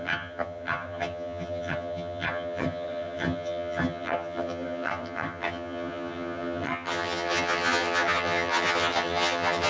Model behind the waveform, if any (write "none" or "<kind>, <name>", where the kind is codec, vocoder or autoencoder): vocoder, HiFi-GAN